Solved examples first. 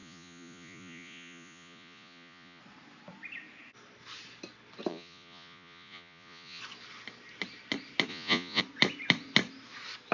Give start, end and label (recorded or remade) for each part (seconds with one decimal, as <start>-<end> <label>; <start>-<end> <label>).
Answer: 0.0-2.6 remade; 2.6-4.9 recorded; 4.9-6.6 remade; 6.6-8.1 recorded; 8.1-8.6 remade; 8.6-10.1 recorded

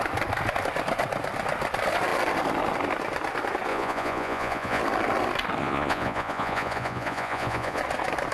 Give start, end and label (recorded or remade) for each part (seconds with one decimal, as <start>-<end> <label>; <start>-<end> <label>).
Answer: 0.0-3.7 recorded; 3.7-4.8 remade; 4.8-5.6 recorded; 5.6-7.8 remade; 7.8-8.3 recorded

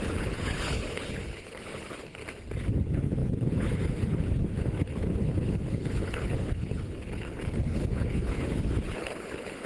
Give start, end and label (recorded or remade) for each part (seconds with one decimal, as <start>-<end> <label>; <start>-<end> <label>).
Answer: 0.0-2.2 remade; 2.2-2.8 recorded; 2.8-9.7 remade

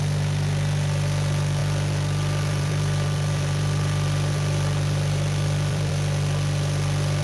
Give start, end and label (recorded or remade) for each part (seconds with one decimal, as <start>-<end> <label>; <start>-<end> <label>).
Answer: 0.0-1.6 recorded; 1.6-5.9 remade; 5.9-7.2 recorded